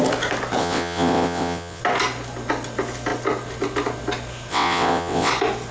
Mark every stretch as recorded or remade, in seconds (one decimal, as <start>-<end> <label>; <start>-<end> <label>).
0.0-0.6 recorded; 0.6-1.8 remade; 1.8-4.5 recorded; 4.5-5.3 remade; 5.3-5.7 recorded